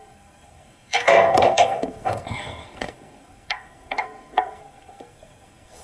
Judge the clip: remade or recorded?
remade